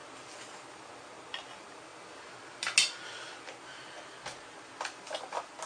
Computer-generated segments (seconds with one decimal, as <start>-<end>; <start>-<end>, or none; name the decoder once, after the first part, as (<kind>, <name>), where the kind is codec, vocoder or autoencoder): none